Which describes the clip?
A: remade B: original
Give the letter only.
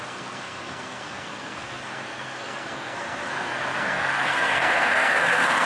A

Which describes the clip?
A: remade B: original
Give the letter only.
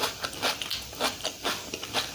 A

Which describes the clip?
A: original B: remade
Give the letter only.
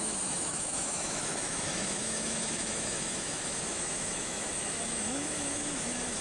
B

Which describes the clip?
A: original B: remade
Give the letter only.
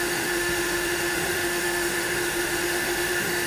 B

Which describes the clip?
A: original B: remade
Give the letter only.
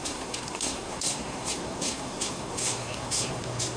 B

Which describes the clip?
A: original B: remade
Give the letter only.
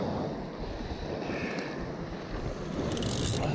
A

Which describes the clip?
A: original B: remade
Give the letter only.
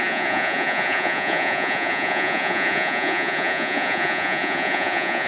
B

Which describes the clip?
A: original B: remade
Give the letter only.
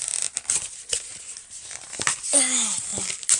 A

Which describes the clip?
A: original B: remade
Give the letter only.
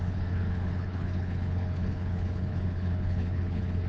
B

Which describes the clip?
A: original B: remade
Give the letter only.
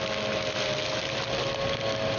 A